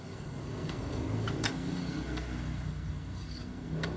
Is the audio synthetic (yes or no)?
yes